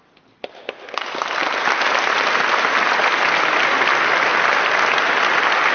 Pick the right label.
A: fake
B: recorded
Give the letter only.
B